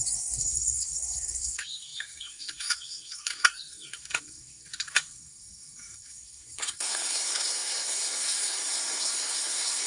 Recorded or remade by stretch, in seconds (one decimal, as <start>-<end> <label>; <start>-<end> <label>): 0.0-9.9 remade